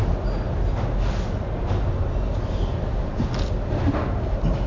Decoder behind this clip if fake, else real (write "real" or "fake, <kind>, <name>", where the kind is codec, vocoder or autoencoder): real